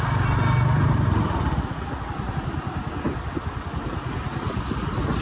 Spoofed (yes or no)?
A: no